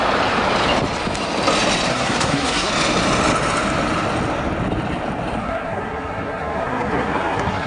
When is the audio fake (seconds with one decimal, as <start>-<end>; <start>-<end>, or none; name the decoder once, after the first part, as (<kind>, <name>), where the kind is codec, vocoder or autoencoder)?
1.9-2.7 (codec, SNAC); 5.4-7.7